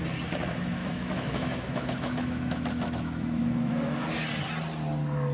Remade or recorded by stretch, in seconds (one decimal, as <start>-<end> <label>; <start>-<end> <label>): 0.0-0.8 recorded; 0.8-4.0 remade; 4.0-5.3 recorded